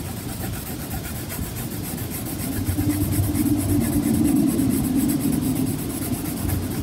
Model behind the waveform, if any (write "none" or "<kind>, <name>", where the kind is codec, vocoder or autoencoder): none